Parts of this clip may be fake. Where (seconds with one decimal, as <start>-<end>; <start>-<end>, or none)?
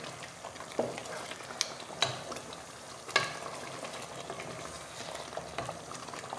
none